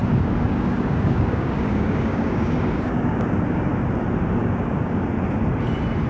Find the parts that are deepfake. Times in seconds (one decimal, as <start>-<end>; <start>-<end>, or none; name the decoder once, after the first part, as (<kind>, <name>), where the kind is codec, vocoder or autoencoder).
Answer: 0.0-3.7 (codec, DAC); 4.4-5.1